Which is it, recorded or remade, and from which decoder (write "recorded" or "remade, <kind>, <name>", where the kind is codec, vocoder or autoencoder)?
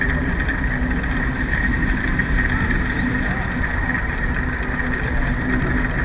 recorded